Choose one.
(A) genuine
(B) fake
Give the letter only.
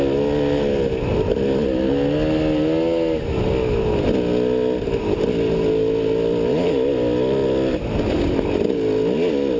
A